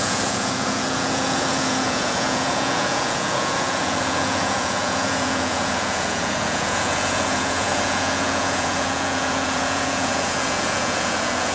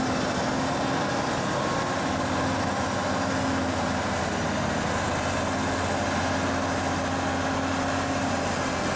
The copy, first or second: first